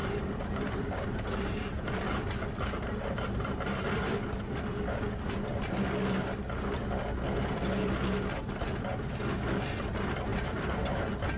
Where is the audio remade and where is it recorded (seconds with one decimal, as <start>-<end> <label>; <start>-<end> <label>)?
0.0-4.1 remade; 4.1-10.3 recorded; 10.3-11.0 remade; 11.0-11.4 recorded